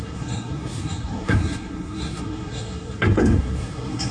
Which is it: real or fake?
fake